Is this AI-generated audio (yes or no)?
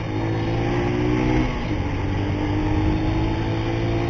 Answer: no